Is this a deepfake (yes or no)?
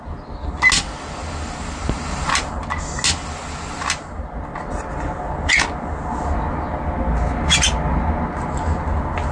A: no